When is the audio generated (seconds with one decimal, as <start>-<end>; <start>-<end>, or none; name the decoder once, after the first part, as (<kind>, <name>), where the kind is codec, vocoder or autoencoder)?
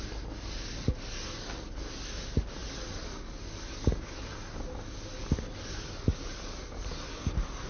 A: none